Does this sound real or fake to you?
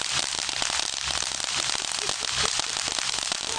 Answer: real